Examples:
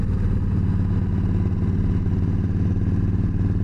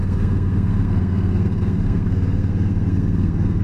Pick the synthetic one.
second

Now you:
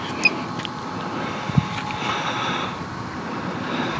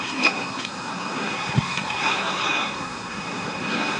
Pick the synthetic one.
second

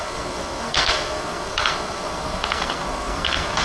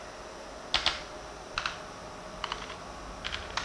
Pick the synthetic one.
first